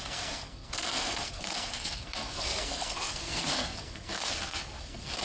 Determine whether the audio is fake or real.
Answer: fake